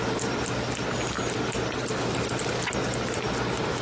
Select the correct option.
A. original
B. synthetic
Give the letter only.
A